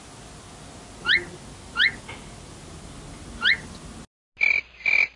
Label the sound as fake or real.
real